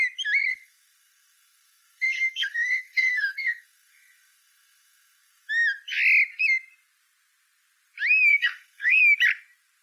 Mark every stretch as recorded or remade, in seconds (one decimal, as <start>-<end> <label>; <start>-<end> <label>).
0.0-0.5 recorded; 0.5-5.5 remade; 5.5-8.3 recorded; 8.3-9.0 remade; 9.0-9.8 recorded